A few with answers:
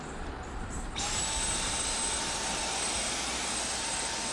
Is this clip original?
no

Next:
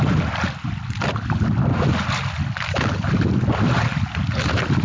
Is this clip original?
yes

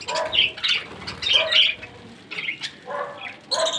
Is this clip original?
yes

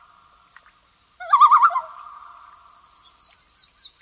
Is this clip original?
yes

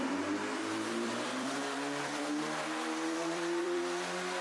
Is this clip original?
no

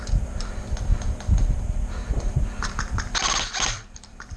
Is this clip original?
no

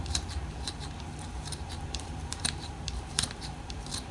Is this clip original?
no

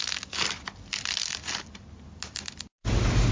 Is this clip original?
yes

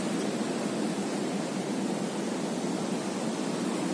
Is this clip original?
yes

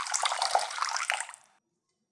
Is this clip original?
no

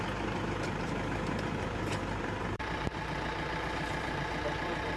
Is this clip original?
no